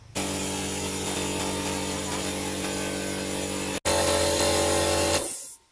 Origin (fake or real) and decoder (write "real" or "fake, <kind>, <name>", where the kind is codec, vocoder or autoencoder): real